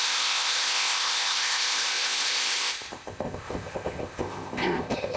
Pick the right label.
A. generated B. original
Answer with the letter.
A